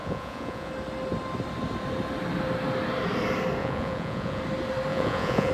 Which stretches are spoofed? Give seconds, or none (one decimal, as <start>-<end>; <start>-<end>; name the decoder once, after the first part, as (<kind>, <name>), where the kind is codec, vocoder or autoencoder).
0.0-0.7 (vocoder, Vocos); 3.6-4.4; 4.9-5.5